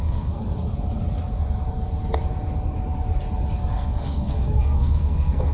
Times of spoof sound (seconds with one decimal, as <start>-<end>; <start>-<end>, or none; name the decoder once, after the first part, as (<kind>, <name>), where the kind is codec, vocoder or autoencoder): 0.0-0.4 (codec, SNAC); 3.7-5.5